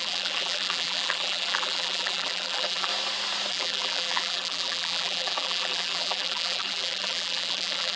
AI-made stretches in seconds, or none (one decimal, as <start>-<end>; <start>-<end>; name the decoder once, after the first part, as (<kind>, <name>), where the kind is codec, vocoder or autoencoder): 0.0-2.9 (vocoder, BigVGAN v2); 3.5-8.0